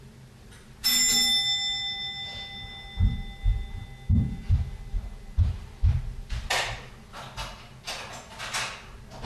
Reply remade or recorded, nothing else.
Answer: recorded